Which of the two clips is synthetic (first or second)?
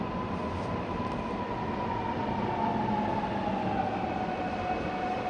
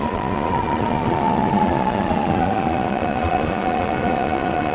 second